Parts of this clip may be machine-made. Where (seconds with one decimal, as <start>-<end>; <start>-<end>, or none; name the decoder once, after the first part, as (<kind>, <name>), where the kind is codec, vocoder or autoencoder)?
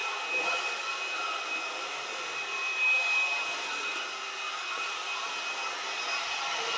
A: none